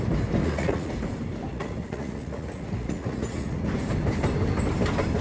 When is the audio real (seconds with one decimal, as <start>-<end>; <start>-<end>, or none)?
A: 0.0-0.4; 0.9-1.5; 3.7-5.2